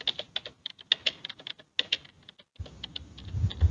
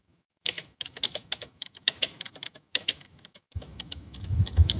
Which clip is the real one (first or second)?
first